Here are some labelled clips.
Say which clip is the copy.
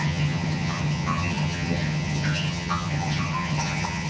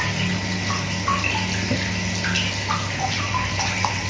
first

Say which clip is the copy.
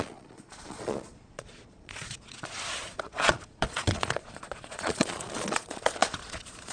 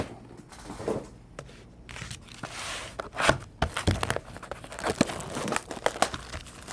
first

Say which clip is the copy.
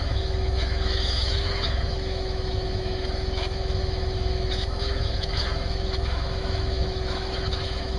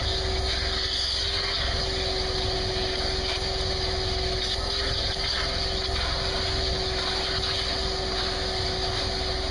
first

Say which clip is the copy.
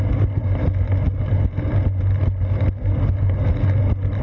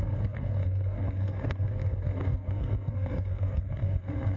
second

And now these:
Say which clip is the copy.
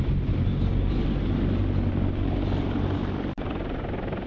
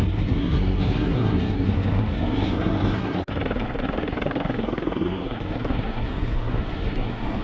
second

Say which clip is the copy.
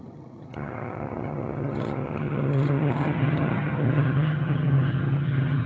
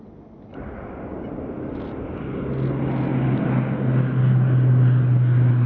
first